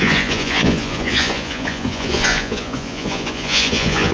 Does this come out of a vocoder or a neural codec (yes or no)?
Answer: yes